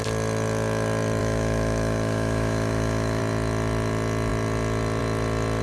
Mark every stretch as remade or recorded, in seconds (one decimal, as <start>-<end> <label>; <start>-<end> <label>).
0.0-1.2 recorded; 1.2-3.2 remade; 3.2-5.6 recorded